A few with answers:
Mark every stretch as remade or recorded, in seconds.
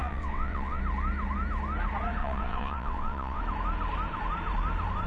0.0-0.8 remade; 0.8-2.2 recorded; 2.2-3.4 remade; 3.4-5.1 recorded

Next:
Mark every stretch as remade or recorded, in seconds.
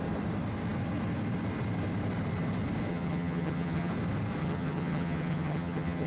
0.0-2.9 recorded; 2.9-3.9 remade; 3.9-4.4 recorded; 4.4-6.1 remade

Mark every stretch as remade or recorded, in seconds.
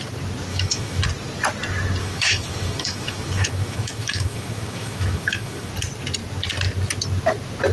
0.0-0.5 recorded; 0.5-1.0 remade; 1.0-2.0 recorded; 2.0-5.7 remade; 5.7-7.7 recorded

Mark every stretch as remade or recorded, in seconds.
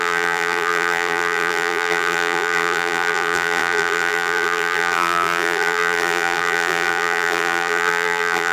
0.0-8.5 remade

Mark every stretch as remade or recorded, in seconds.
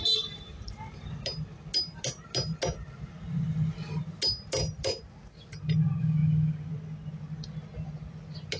0.0-8.6 recorded